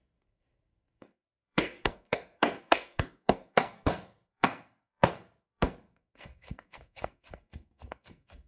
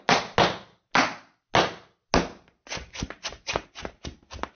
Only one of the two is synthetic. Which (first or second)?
first